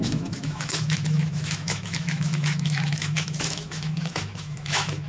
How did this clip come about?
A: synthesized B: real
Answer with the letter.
A